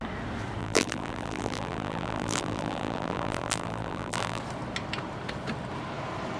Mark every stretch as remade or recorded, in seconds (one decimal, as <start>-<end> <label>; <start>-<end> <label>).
0.0-0.6 recorded; 0.6-4.4 remade; 4.4-6.4 recorded